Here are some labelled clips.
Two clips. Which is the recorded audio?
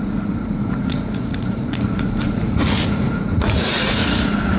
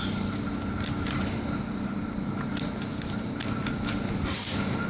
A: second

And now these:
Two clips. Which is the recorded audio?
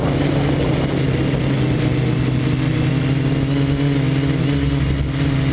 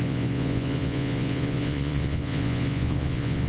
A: first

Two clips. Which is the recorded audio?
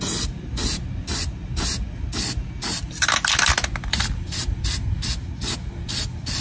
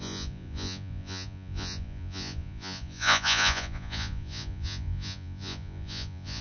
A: first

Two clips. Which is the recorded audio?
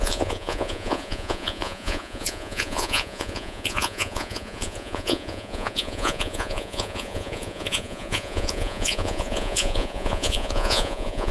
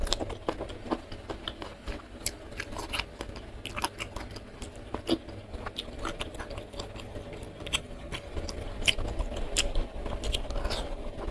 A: second